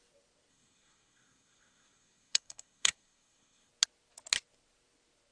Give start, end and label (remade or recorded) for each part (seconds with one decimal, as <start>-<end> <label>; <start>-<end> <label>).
0.0-0.5 recorded; 0.5-3.7 remade; 3.7-5.3 recorded